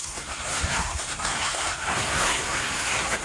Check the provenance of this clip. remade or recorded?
remade